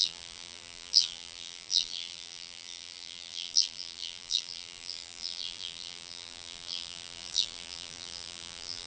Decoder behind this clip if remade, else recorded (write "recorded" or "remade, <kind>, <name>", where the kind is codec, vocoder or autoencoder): remade, vocoder, BigVGAN v2